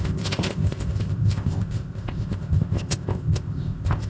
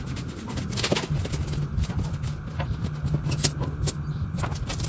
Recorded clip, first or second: second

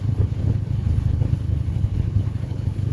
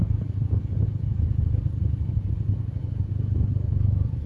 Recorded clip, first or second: second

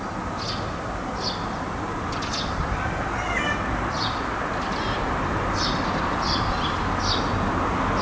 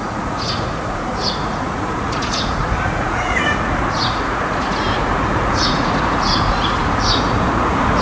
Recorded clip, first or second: first